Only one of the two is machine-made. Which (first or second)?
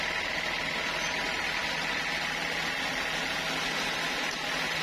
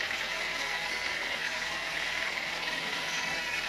second